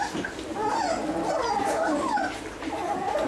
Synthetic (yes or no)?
no